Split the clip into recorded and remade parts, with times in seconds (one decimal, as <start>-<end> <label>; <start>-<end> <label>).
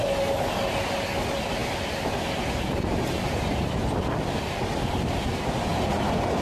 0.0-1.6 recorded; 1.6-3.5 remade; 3.5-6.4 recorded